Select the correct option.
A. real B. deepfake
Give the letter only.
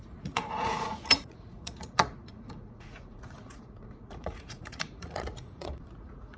B